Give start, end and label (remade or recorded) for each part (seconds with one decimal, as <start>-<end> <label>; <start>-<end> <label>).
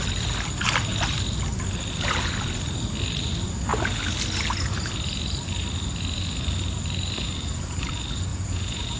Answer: 0.0-8.3 recorded; 8.3-9.0 remade